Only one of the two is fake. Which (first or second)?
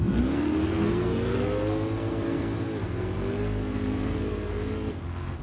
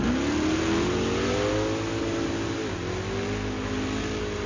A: first